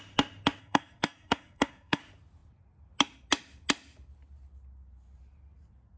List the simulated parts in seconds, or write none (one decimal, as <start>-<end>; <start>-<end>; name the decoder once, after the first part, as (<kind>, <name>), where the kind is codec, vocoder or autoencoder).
0.6-2.0 (codec, SNAC)